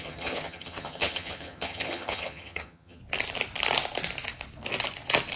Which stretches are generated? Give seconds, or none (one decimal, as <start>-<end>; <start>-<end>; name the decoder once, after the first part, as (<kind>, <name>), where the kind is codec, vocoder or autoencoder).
0.0-3.0 (vocoder, HiFi-GAN)